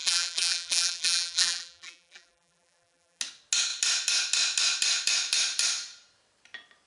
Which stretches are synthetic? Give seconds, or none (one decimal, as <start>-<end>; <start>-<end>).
0.0-3.2